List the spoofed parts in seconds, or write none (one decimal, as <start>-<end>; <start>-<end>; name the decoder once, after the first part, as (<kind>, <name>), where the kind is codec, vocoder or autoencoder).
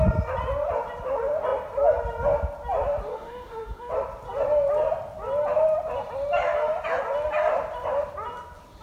3.1-3.9 (autoencoder, DAC-VAE)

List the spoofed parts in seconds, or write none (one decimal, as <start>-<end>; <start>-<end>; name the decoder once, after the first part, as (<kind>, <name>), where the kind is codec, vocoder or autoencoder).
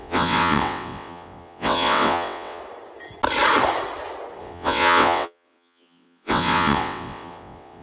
0.0-2.6 (vocoder, WaveNeXt); 4.4-7.8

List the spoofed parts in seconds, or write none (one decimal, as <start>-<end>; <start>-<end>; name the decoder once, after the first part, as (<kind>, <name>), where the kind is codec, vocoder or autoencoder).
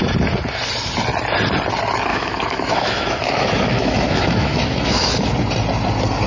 2.1-5.1 (autoencoder, DAC-VAE)